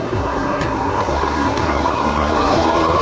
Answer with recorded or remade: remade